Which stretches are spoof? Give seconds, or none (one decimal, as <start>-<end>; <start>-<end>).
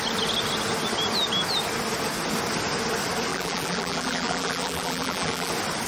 3.3-5.5